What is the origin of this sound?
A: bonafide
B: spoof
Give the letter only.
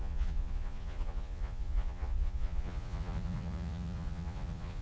B